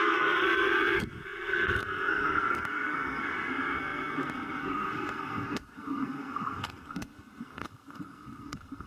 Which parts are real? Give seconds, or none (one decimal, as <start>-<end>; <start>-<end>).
none